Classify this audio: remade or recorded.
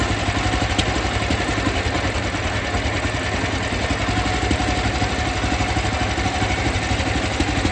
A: recorded